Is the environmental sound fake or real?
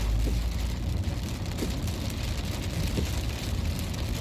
real